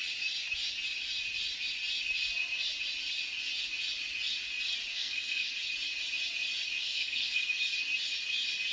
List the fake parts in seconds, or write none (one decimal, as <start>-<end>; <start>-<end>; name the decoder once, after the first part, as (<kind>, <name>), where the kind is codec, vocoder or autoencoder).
4.9-5.5 (codec, SNAC); 6.8-7.5